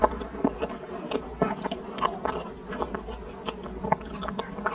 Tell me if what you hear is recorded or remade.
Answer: recorded